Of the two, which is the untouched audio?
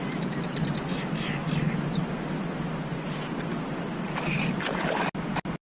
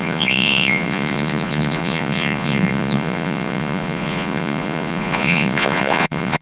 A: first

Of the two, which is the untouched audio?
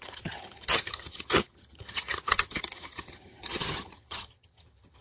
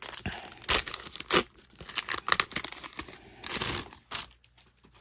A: second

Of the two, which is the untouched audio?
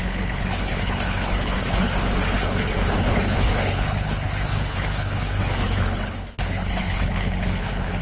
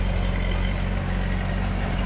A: second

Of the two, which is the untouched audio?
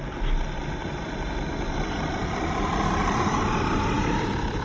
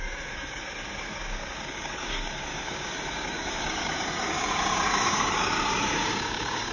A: first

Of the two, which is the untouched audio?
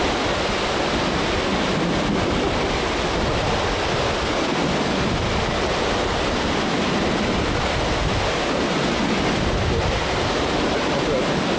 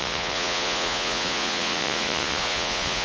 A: first